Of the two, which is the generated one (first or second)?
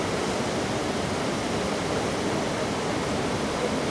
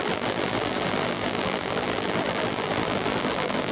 second